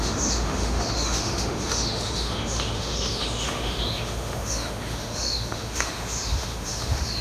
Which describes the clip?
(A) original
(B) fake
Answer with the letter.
B